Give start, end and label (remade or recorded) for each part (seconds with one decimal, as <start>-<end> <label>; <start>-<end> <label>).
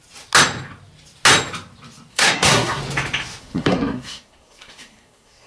0.0-2.1 recorded; 2.1-2.8 remade; 2.8-3.4 recorded; 3.4-5.5 remade